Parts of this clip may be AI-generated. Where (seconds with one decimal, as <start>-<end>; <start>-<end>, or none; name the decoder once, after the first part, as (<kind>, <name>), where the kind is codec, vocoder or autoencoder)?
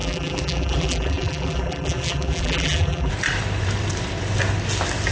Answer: 0.0-3.1 (vocoder, BigVGAN v2)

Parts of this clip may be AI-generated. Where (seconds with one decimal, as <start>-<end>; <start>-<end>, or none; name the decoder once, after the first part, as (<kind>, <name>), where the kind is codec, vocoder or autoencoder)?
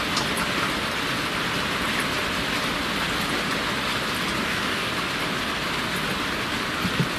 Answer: 4.4-4.9 (codec, DAC)